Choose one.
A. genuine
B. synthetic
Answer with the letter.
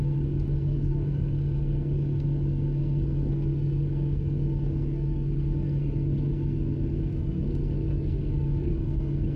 B